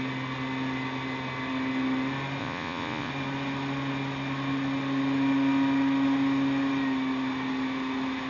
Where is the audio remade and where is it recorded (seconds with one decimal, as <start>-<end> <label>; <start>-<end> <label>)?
0.0-2.4 recorded; 2.4-3.1 remade; 3.1-8.3 recorded